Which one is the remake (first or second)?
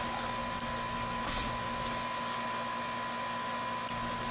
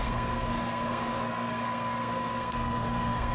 second